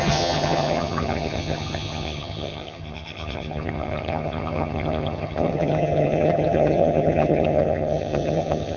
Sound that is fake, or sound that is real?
fake